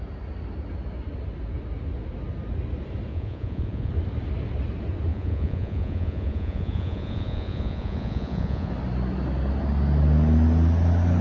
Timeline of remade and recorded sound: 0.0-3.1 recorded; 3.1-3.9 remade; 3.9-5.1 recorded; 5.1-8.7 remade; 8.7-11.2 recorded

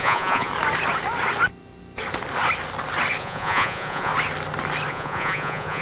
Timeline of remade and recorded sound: 0.0-0.5 remade; 0.5-3.2 recorded; 3.2-4.1 remade; 4.1-4.9 recorded; 4.9-5.8 remade

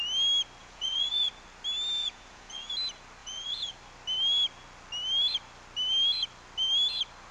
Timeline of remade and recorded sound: 0.0-0.6 recorded; 0.6-1.3 remade; 1.3-2.0 recorded; 2.0-2.7 remade; 2.7-3.2 recorded; 3.2-3.7 remade; 3.7-7.3 recorded

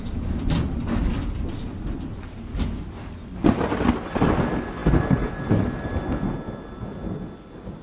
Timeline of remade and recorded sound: 0.0-7.8 recorded

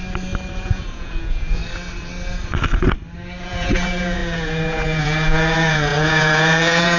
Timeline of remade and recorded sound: 0.0-0.6 recorded; 0.6-1.6 remade; 1.6-3.4 recorded; 3.4-7.0 remade